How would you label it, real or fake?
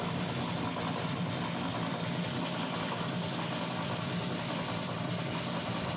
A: real